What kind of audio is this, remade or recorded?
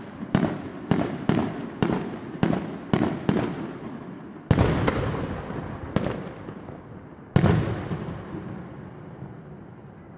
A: recorded